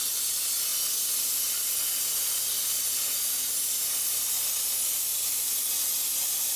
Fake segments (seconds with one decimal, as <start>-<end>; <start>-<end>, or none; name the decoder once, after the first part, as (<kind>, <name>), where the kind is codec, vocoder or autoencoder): none